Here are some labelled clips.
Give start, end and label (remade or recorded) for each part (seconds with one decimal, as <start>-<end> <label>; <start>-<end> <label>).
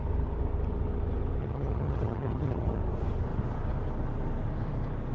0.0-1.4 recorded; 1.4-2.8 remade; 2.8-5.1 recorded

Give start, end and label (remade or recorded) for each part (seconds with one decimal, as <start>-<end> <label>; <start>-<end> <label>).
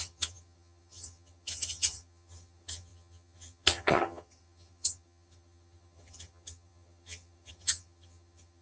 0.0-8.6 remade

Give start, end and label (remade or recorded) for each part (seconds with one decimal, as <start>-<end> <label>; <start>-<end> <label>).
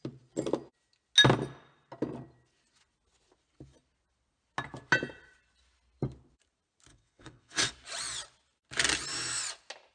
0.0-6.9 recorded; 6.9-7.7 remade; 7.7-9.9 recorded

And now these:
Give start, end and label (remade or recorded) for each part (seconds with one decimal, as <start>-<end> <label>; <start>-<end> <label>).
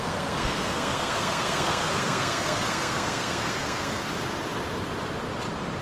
0.0-4.1 remade; 4.1-5.8 recorded